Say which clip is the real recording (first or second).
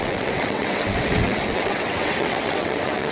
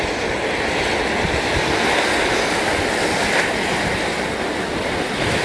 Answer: second